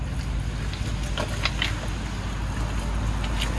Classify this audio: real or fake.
real